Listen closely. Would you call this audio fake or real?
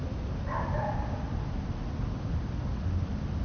real